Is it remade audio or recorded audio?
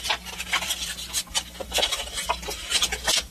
remade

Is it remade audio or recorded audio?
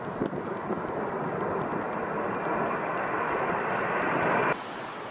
remade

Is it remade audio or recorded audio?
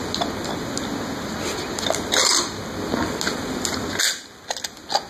recorded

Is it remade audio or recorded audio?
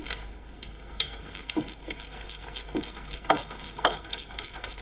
remade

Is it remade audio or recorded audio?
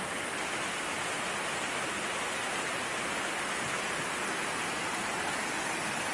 recorded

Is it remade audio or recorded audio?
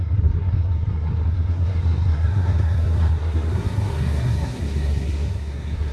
remade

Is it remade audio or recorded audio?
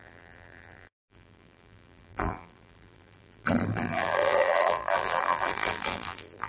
remade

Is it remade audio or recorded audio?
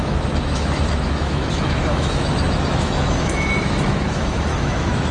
remade